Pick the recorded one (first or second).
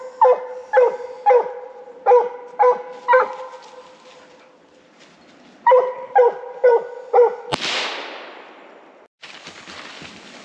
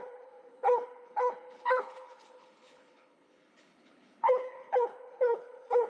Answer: first